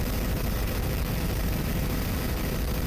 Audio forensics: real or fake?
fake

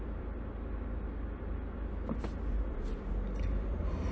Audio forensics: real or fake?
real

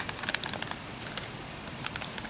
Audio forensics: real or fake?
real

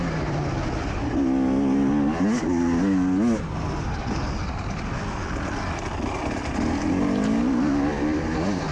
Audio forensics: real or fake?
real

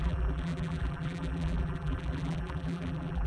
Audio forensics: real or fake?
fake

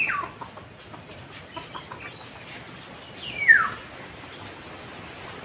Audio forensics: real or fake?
real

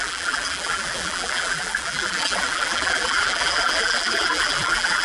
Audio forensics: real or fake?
fake